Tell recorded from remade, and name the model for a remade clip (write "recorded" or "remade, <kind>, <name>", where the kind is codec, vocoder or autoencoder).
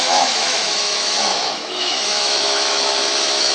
remade, autoencoder, DAC-VAE